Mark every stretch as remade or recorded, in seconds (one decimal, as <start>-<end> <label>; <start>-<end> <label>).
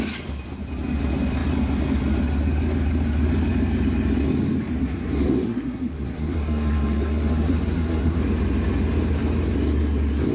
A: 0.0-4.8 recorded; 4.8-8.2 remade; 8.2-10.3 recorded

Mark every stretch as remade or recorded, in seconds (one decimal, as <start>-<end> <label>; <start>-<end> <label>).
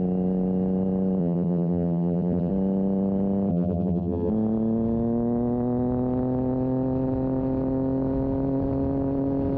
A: 0.0-1.2 recorded; 1.2-2.5 remade; 2.5-3.5 recorded; 3.5-4.3 remade; 4.3-9.6 recorded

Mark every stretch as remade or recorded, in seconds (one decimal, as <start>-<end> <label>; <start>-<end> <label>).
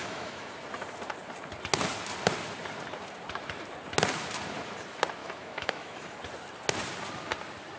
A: 0.0-0.5 remade; 0.5-5.2 recorded; 5.2-6.2 remade; 6.2-7.8 recorded